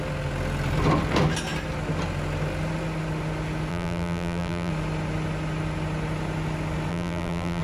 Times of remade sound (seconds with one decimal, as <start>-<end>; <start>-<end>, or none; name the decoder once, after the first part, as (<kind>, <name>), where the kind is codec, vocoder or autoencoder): 3.7-4.7 (vocoder, BigVGAN v2); 6.9-7.6